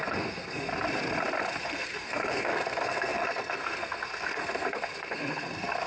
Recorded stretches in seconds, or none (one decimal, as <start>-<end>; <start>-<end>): 0.7-1.6